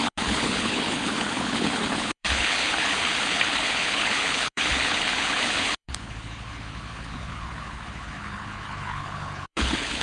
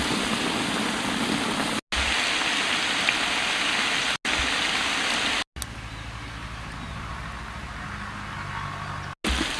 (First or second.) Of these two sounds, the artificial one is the first